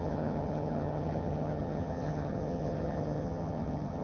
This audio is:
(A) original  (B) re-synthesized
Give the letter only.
B